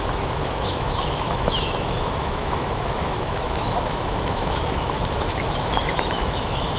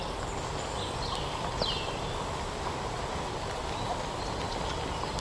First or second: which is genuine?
second